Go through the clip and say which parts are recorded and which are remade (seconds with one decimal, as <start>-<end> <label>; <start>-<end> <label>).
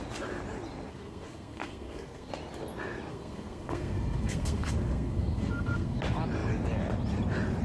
0.0-0.9 recorded; 0.9-2.3 remade; 2.3-3.1 recorded; 3.1-6.0 remade; 6.0-7.6 recorded